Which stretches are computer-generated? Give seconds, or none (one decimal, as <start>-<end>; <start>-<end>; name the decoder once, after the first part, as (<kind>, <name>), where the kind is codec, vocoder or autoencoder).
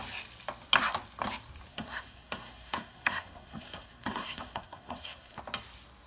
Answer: 1.7-5.4 (codec, SNAC)